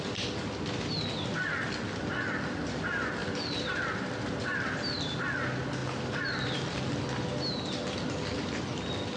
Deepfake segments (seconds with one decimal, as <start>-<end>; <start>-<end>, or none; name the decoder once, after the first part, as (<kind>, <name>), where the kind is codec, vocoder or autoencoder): 5.8-6.8 (vocoder, BigVGAN v2)

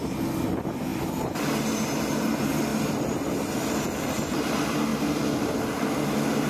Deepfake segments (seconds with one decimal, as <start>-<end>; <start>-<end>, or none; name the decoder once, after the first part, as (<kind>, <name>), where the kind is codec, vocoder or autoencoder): 0.9-1.5 (vocoder, BigVGAN v2); 4.9-5.6

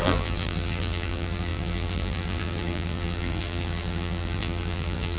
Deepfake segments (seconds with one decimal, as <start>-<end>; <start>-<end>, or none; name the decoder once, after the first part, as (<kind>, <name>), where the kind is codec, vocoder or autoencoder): 0.0-5.2 (vocoder, BigVGAN v2)